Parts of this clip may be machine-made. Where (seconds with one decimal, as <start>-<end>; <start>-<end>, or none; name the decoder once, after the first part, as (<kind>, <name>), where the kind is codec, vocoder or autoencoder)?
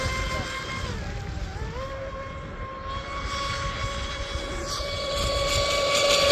none